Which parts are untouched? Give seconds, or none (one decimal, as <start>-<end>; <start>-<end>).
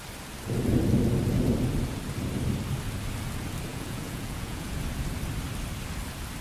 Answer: 0.0-3.7; 4.8-6.4